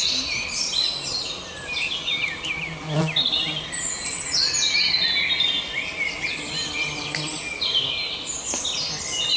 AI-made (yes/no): no